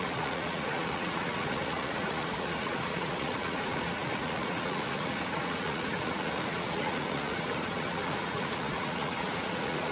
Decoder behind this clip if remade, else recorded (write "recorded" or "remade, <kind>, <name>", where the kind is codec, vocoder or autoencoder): remade, vocoder, Vocos